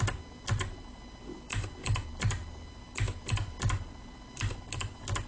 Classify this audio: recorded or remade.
recorded